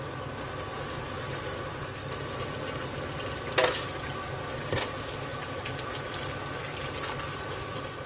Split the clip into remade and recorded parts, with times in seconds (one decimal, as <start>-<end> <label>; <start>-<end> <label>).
0.0-8.1 recorded